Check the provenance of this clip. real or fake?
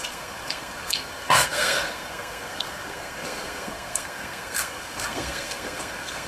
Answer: fake